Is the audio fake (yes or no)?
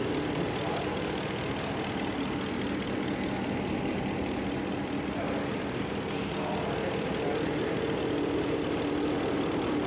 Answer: no